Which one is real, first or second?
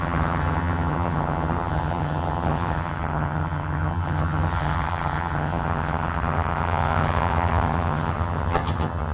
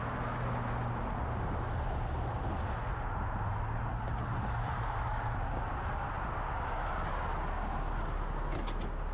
second